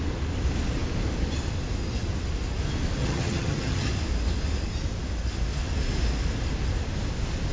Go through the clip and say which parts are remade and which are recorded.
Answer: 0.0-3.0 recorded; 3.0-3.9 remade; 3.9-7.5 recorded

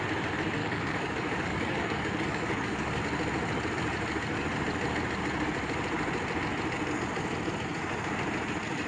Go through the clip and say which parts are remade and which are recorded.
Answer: 0.0-0.6 recorded; 0.6-3.0 remade; 3.0-8.9 recorded

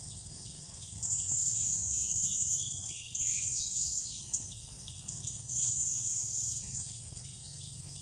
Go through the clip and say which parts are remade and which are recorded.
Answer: 0.0-8.0 remade

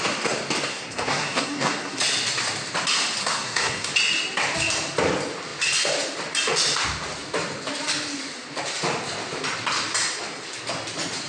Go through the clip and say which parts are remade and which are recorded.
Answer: 0.0-0.7 recorded; 0.7-2.0 remade; 2.0-3.2 recorded; 3.2-3.9 remade; 3.9-11.3 recorded

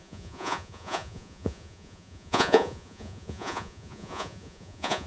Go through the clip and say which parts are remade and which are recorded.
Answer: 0.0-5.1 remade

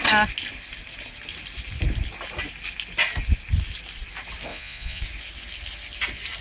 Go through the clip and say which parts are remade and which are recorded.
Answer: 0.0-4.5 recorded; 4.5-5.0 remade; 5.0-6.4 recorded

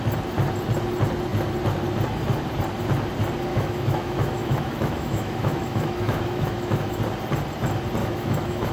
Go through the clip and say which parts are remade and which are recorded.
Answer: 0.0-3.5 recorded; 3.5-7.0 remade; 7.0-8.0 recorded; 8.0-8.7 remade